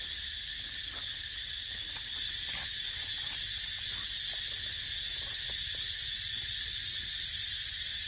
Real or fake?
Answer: real